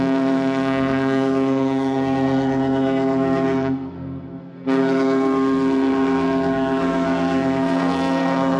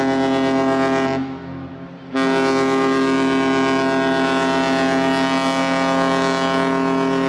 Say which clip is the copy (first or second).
first